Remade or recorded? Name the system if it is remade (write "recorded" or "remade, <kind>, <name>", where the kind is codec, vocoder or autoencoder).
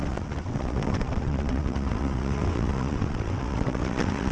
remade, vocoder, WaveNeXt